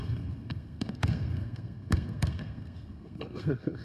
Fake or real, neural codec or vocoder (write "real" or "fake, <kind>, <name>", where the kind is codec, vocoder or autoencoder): fake, codec, SNAC